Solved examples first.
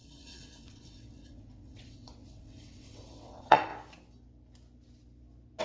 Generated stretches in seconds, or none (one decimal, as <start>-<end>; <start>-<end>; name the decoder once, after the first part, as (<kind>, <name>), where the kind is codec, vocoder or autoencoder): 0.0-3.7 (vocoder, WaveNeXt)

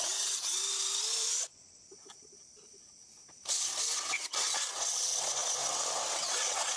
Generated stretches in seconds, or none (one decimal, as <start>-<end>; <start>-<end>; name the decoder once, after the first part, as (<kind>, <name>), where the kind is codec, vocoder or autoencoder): 0.0-0.6 (vocoder, WaveNeXt); 3.8-6.8

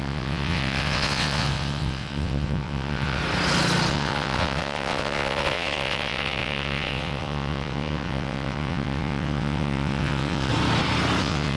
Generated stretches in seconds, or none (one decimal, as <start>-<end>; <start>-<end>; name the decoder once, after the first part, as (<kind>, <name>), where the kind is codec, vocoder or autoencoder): 0.0-3.2 (vocoder, WaveNeXt); 3.9-10.5; 11.2-11.6

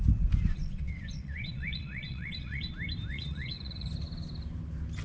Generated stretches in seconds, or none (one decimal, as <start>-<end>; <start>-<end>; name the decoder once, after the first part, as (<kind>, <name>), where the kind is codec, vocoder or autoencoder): 0.5-2.7 (vocoder, WaveNeXt); 3.1-3.9